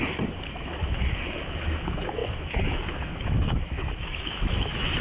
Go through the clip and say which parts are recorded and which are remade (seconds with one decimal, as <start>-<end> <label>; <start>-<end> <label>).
0.0-0.6 recorded; 0.6-5.0 remade